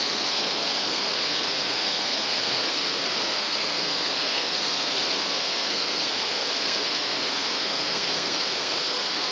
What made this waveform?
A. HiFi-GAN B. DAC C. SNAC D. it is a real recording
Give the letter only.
C